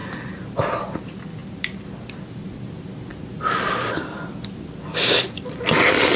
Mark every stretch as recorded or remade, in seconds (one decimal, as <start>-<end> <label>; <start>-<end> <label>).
0.0-6.2 recorded